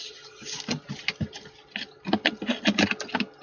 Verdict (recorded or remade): recorded